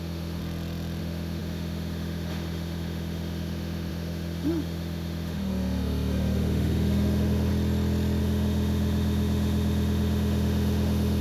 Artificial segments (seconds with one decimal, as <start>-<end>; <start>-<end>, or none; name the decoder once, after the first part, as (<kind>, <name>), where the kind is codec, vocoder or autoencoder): 0.0-0.4 (autoencoder, DAC-VAE); 1.0-7.5; 8.2-11.2